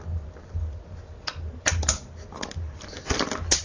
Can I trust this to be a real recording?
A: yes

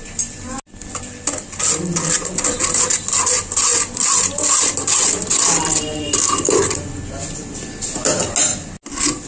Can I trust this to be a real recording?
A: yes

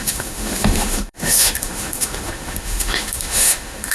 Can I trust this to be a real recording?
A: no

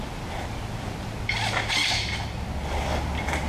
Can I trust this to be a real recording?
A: yes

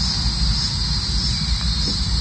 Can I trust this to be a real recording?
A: yes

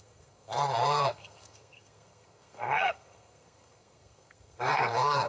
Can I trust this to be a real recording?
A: no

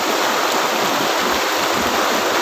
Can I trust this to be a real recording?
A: yes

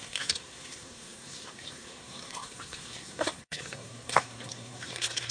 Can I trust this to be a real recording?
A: no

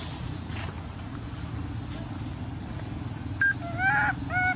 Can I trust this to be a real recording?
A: yes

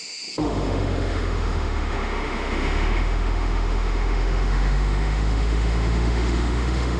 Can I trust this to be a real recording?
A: no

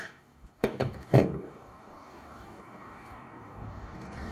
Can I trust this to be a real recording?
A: no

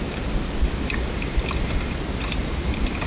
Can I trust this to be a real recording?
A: yes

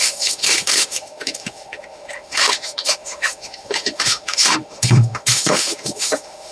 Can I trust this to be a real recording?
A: no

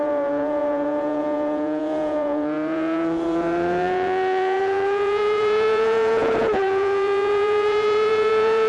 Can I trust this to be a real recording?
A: no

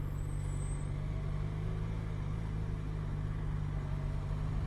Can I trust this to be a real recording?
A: yes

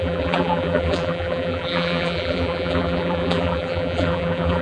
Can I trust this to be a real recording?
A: no